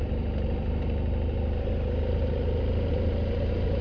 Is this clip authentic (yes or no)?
yes